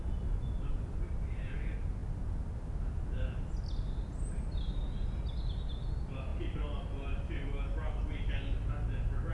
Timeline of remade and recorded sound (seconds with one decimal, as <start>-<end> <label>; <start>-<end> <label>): 0.0-9.3 recorded